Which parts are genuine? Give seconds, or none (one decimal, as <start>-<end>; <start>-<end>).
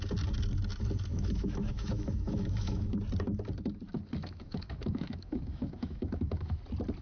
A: 0.0-1.1; 3.0-4.2; 6.6-7.0